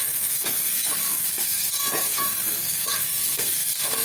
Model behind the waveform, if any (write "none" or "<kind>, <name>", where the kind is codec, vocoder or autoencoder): codec, SNAC